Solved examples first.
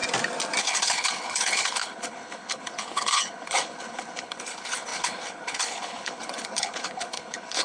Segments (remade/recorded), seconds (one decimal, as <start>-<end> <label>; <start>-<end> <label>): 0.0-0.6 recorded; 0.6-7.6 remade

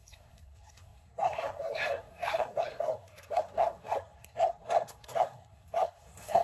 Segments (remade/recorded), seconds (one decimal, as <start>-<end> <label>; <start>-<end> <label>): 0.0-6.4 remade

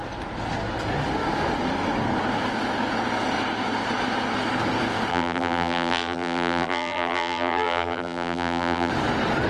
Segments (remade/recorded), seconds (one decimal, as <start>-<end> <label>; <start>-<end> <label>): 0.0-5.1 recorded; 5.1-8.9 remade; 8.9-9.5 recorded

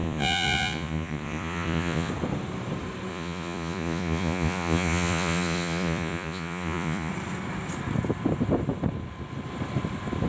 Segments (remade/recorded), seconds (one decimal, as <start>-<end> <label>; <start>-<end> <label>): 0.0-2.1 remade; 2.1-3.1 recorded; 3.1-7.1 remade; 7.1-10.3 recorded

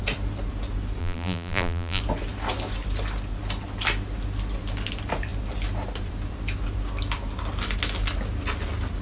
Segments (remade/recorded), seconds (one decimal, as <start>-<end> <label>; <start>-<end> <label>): 0.0-1.0 recorded; 1.0-2.0 remade; 2.0-9.0 recorded

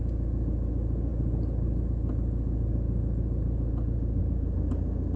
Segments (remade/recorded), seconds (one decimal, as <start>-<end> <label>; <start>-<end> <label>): 0.0-5.2 recorded

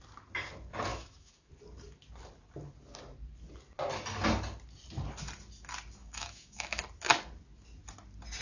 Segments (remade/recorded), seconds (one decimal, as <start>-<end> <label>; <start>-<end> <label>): 0.0-0.9 recorded; 0.9-1.5 remade; 1.5-6.0 recorded; 6.0-6.8 remade; 6.8-8.4 recorded

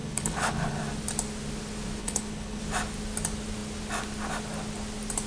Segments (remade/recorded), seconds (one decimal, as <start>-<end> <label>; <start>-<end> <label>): 0.0-0.8 remade; 0.8-2.0 recorded; 2.0-2.6 remade; 2.6-5.3 recorded